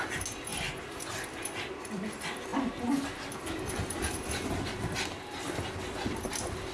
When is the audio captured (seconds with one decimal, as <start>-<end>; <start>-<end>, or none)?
0.0-6.7